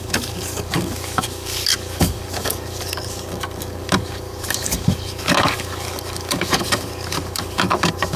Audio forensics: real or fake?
fake